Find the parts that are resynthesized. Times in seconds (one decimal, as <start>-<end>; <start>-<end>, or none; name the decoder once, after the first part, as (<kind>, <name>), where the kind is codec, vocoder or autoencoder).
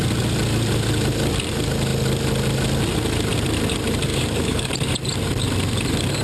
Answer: 4.1-4.7 (codec, DAC)